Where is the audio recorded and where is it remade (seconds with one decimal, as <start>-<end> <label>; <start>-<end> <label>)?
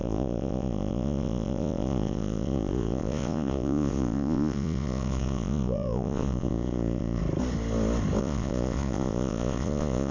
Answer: 0.0-7.2 remade; 7.2-8.2 recorded; 8.2-10.1 remade